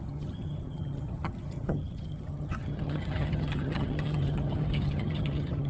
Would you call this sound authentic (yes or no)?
no